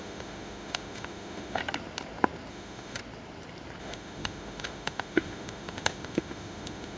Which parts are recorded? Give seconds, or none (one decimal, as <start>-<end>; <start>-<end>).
1.6-2.5; 3.0-3.8